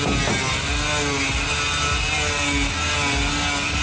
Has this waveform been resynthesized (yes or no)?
no